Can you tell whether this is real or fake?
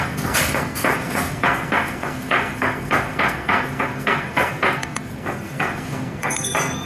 fake